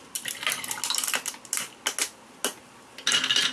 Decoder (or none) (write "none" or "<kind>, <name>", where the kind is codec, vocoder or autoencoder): none